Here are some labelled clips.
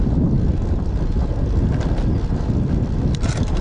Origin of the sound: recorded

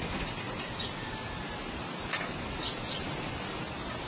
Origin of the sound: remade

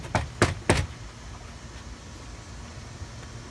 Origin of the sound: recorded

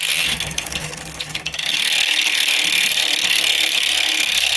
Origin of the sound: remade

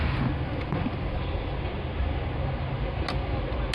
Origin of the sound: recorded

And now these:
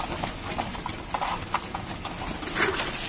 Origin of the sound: recorded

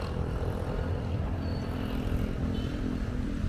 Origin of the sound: recorded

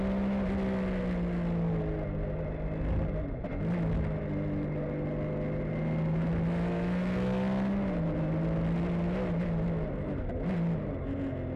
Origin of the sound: recorded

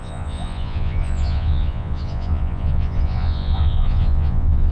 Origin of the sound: remade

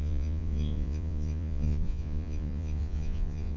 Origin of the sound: remade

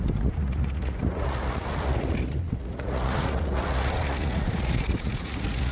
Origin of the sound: remade